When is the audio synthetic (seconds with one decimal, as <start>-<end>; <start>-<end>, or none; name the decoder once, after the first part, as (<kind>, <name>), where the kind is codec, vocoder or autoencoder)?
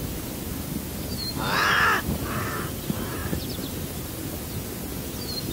none